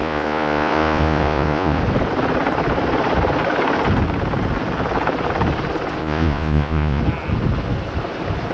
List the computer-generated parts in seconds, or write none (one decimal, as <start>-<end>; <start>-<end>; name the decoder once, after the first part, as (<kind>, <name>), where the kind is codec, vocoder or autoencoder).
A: 0.0-1.8 (vocoder, Vocos); 6.0-7.0